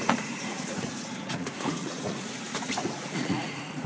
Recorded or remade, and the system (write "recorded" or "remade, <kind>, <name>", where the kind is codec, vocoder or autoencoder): remade, vocoder, Vocos